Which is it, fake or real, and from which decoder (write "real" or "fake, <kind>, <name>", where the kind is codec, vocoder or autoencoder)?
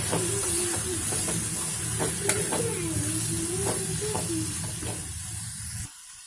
real